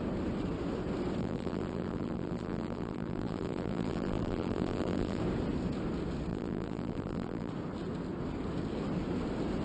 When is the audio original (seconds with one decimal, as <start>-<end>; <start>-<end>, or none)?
0.0-1.2; 5.2-6.3; 7.5-9.6